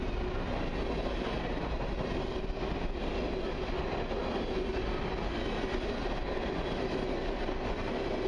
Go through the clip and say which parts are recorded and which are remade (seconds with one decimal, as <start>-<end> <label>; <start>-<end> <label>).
0.0-8.3 recorded